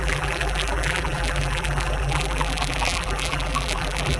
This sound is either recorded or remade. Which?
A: remade